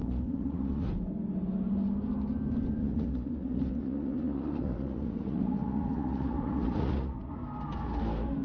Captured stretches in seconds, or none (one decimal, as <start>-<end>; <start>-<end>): 0.9-2.8; 7.3-8.4